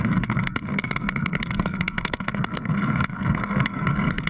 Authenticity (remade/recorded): remade